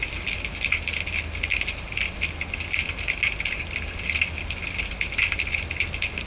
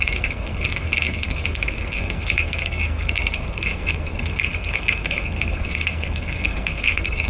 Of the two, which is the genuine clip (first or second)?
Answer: first